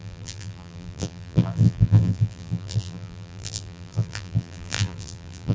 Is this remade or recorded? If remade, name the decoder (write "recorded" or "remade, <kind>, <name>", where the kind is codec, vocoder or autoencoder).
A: remade, vocoder, BigVGAN v2